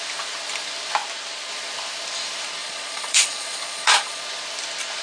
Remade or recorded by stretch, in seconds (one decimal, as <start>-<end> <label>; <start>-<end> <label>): 0.0-2.6 recorded; 2.6-4.2 remade; 4.2-5.0 recorded